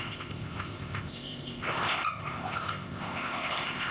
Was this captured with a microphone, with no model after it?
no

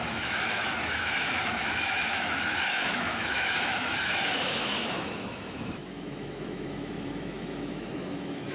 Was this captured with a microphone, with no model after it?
no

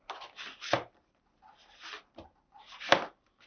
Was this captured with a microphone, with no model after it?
yes